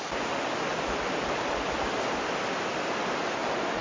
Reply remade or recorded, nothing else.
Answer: recorded